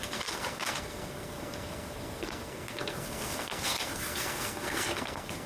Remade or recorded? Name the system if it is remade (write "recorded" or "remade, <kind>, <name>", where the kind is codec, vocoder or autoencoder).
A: remade, codec, SNAC